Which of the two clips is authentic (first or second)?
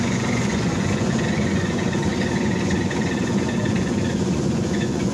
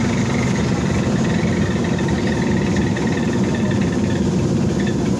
second